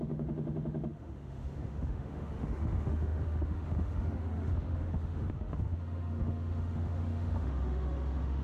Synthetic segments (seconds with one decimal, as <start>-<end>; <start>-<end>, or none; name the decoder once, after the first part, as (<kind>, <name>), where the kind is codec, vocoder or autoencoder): 0.0-8.4 (autoencoder, DAC-VAE)